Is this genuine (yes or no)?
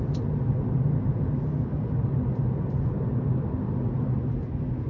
yes